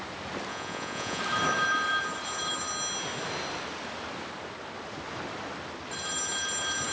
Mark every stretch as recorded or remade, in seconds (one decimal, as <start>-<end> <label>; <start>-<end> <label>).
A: 0.0-0.5 recorded; 0.5-1.2 remade; 1.2-6.9 recorded